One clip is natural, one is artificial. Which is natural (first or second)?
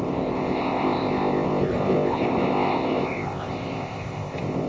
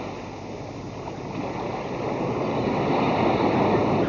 second